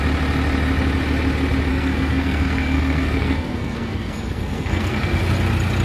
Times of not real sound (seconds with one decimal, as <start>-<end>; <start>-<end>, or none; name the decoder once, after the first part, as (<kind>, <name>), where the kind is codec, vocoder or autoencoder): 1.7-5.2 (codec, SNAC)

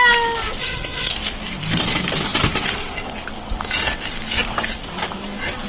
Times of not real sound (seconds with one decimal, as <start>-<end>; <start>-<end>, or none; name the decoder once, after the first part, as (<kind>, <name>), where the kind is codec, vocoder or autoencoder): 0.6-1.1 (codec, SNAC)